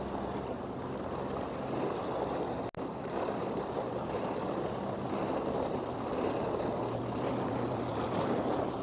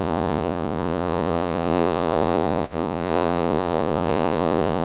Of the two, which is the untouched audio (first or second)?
first